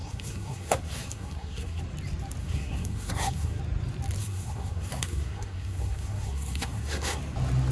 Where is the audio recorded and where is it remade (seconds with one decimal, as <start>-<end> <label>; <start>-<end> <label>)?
0.0-1.8 remade; 1.8-2.4 recorded; 2.4-3.6 remade; 3.6-4.2 recorded; 4.2-7.2 remade; 7.2-7.7 recorded